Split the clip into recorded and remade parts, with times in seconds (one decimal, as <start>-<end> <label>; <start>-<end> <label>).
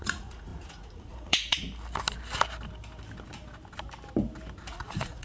0.0-1.6 remade; 1.6-4.7 recorded; 4.7-5.2 remade